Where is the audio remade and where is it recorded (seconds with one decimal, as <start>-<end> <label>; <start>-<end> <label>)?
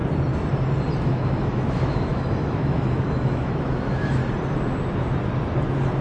0.0-1.0 recorded; 1.0-4.2 remade; 4.2-6.0 recorded